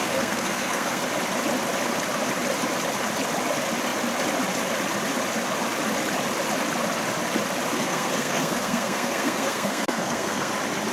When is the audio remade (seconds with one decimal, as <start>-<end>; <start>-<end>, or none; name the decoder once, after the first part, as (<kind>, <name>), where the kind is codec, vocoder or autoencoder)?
0.0-1.0 (codec, SNAC); 7.7-10.5

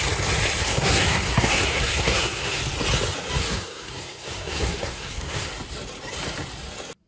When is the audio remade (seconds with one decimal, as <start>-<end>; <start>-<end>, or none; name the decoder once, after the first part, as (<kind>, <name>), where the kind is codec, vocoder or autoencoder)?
0.6-2.6 (codec, SNAC); 3.4-5.5

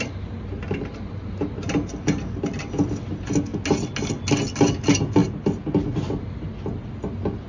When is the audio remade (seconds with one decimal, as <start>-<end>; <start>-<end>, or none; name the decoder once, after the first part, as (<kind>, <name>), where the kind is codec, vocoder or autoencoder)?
none

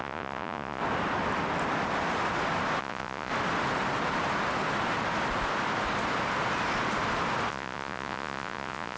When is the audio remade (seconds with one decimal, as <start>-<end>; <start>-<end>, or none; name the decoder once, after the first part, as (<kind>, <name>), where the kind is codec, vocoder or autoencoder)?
0.0-0.8 (vocoder, Vocos); 2.8-3.3; 7.5-9.0

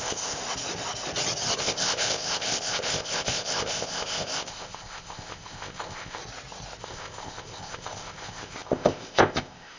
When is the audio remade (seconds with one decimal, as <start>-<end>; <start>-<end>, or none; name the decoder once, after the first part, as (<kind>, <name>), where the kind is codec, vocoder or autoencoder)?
0.0-0.4 (codec, ZipCodec); 1.6-6.2; 6.8-9.8

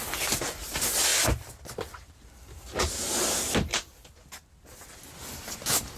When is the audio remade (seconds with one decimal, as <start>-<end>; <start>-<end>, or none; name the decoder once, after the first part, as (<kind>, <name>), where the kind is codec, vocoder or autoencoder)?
none